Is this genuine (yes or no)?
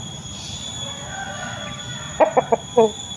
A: yes